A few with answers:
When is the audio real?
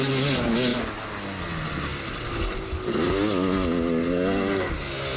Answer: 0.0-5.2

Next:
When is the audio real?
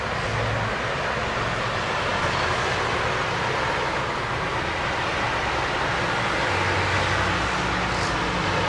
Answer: 0.0-8.7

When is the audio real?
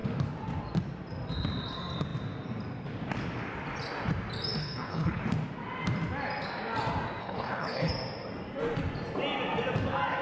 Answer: 0.0-4.6; 5.2-7.2; 7.9-10.2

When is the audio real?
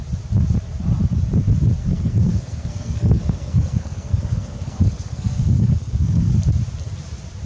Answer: 0.0-1.8; 6.3-7.5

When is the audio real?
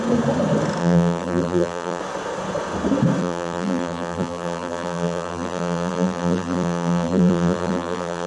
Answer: 0.0-0.8; 2.0-3.2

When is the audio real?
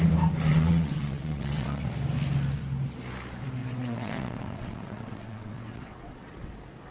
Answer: 0.0-0.5; 1.8-3.6; 6.5-6.9